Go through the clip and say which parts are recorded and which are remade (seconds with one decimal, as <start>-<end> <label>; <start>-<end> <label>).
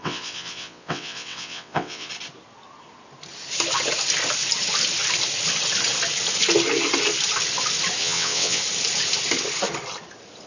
0.0-2.1 remade; 2.1-8.0 recorded; 8.0-8.6 remade; 8.6-10.5 recorded